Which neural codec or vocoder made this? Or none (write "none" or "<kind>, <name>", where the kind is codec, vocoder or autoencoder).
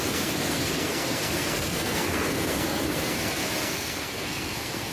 codec, SNAC